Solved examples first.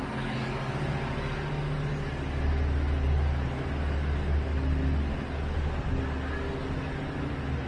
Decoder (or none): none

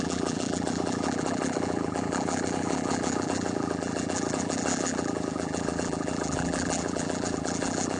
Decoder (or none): vocoder, BigVGAN v2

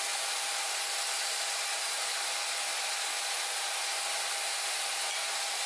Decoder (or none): none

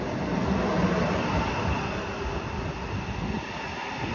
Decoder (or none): none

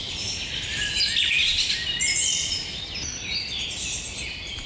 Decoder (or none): none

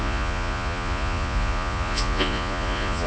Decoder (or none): vocoder, Vocos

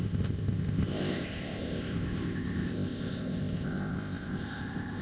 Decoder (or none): codec, ZipCodec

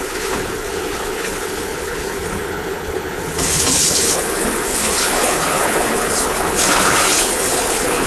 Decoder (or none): codec, HILCodec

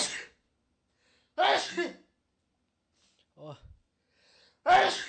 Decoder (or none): none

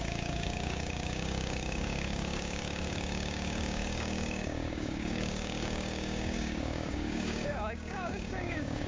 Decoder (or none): codec, DAC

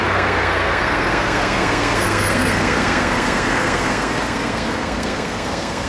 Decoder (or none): codec, SNAC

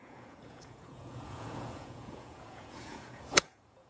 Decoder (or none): vocoder, Vocos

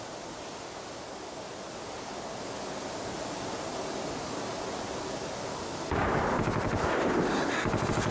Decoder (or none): none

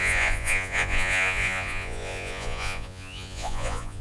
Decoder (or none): vocoder, Vocos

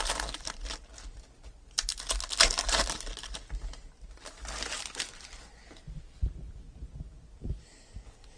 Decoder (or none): none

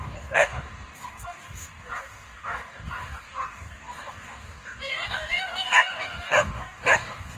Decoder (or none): codec, DAC